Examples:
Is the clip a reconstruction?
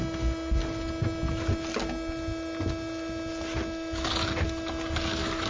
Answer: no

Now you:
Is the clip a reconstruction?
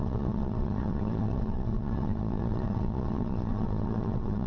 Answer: yes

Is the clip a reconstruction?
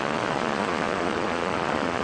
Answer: yes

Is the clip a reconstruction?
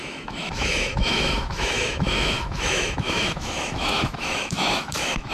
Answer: yes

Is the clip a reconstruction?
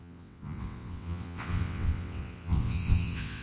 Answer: yes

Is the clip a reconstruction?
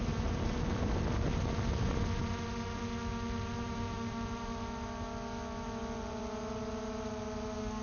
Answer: no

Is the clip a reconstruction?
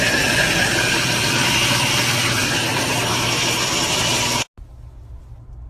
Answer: no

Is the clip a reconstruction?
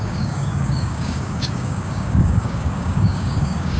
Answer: yes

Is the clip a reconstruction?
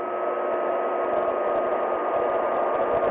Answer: no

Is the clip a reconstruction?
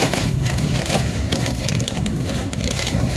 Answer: yes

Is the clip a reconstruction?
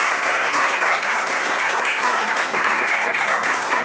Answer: yes